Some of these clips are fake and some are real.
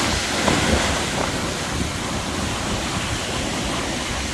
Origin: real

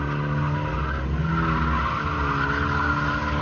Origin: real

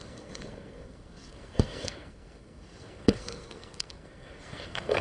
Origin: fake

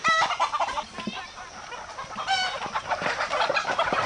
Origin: real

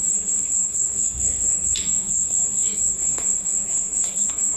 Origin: fake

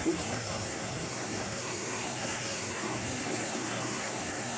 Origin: fake